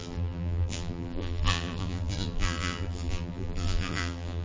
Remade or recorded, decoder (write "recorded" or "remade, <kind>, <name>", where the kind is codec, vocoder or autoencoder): remade, vocoder, BigVGAN v2